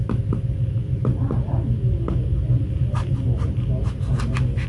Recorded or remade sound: recorded